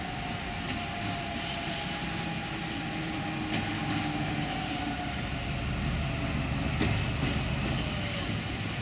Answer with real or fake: real